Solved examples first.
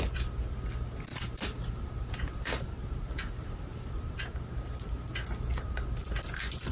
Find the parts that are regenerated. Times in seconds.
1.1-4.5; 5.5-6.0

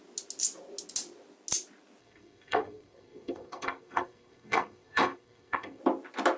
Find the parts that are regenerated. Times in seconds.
2.0-5.8

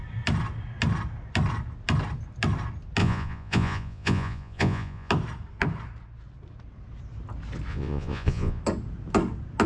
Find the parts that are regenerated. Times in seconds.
3.0-5.1; 7.7-8.6

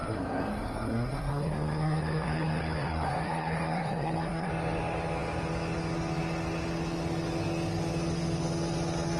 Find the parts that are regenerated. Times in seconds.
0.0-4.5

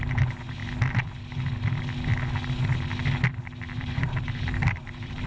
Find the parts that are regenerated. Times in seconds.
0.0-0.6; 3.8-5.3

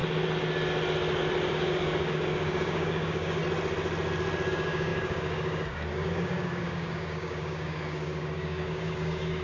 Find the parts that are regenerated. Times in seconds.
1.5-3.4; 4.5-9.4

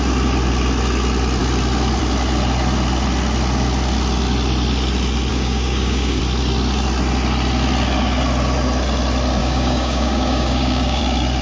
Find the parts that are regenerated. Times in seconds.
5.3-6.2; 9.4-11.0

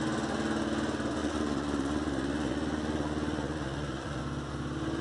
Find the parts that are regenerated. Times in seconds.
1.2-4.2